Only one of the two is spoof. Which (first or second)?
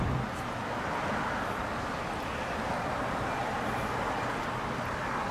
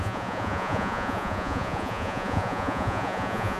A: second